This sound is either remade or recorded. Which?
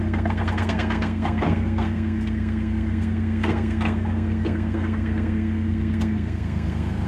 remade